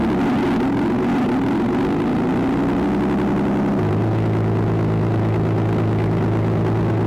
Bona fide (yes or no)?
yes